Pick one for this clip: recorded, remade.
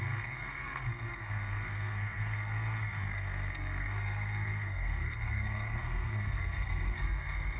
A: remade